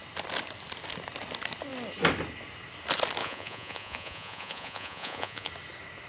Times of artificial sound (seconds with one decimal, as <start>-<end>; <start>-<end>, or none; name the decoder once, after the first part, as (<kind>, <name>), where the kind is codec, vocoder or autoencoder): 3.2-5.5 (vocoder, Vocos)